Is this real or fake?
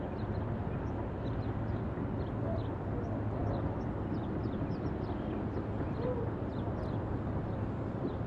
real